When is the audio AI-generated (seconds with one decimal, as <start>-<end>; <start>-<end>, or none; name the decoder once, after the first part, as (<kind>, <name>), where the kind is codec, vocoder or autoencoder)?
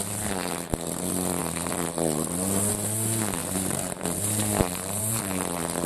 3.4-5.2 (vocoder, BigVGAN v2)